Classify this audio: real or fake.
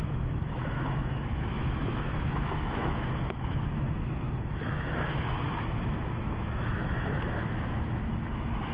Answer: fake